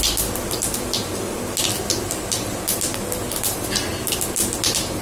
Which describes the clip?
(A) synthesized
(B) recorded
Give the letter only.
B